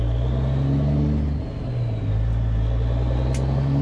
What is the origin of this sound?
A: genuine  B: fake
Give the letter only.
A